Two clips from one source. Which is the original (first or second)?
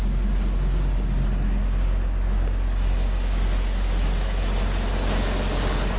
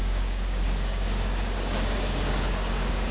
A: first